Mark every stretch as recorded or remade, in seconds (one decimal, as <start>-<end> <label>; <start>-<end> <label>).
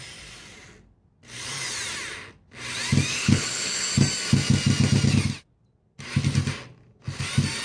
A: 0.0-3.1 recorded; 3.1-3.9 remade; 3.9-7.6 recorded